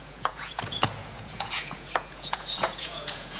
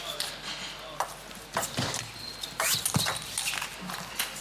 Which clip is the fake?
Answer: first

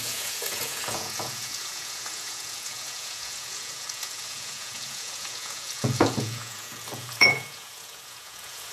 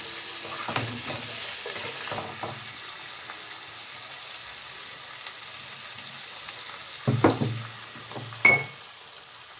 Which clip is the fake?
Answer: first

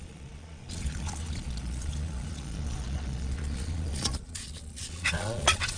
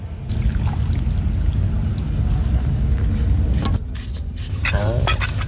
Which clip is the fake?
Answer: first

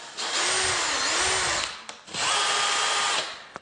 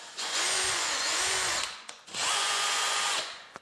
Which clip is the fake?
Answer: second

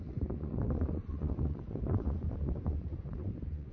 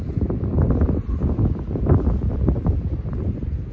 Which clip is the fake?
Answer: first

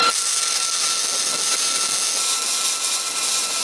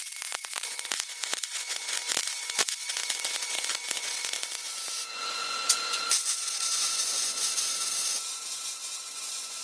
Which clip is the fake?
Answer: second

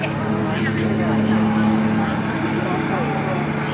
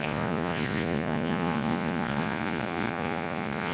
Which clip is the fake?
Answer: second